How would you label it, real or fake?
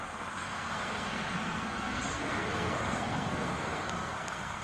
fake